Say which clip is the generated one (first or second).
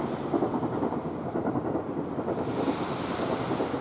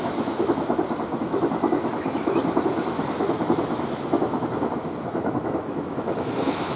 second